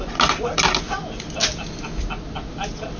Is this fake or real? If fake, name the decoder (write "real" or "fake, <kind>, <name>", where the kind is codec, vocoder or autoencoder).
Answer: real